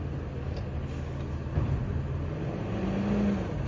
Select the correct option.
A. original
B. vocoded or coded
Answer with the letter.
A